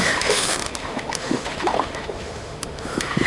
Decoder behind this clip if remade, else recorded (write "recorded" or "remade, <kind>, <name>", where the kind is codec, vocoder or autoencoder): remade, autoencoder, DAC-VAE